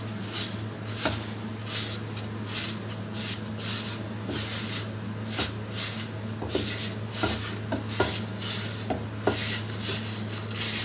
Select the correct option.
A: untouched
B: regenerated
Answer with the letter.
A